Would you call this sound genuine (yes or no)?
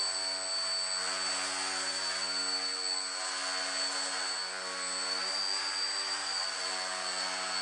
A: yes